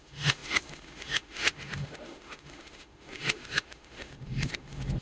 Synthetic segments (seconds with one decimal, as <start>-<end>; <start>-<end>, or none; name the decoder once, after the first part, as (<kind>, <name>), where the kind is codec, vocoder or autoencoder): 0.0-5.0 (autoencoder, DAC-VAE)